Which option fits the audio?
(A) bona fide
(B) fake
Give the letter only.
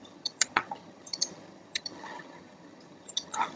B